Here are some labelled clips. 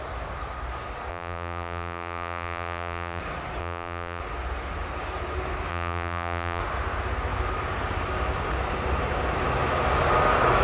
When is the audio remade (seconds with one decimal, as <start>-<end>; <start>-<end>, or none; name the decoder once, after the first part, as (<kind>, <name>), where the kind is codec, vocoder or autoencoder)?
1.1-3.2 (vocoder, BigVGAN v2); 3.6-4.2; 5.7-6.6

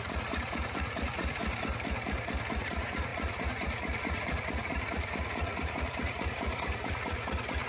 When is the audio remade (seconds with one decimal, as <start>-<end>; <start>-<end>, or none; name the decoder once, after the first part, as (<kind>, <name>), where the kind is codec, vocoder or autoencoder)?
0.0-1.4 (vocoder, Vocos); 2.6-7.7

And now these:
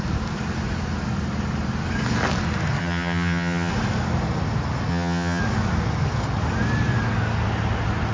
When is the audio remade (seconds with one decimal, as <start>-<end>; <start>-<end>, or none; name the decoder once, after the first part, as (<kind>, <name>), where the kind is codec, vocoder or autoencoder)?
2.8-3.7 (vocoder, HiFi-GAN); 4.9-5.4

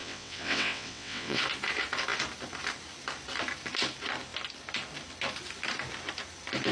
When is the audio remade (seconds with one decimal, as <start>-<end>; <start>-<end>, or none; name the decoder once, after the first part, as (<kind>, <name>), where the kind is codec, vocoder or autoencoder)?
0.0-1.4 (vocoder, WaveNeXt)

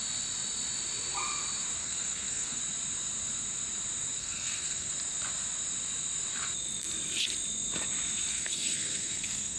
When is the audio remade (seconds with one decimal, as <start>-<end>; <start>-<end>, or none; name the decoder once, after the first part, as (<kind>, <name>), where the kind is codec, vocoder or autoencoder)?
1.8-2.6 (codec, SNAC); 4.2-4.9; 8.3-9.6